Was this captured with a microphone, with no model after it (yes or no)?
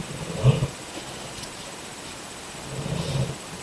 yes